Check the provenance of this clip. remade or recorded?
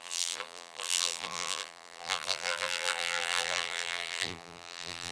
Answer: remade